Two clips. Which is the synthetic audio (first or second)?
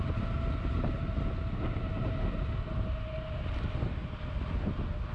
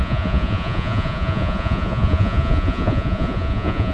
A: second